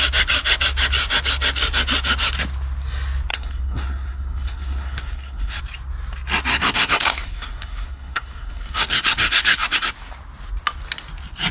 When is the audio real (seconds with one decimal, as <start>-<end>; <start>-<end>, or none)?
0.0-3.3; 5.6-6.5; 9.9-11.5